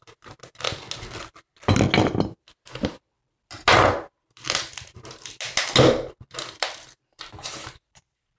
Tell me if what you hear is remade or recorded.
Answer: recorded